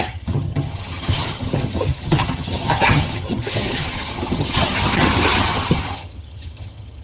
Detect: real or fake fake